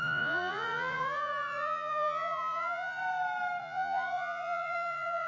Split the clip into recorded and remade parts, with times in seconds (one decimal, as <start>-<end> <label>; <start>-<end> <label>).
0.0-3.0 remade; 3.0-3.6 recorded; 3.6-5.3 remade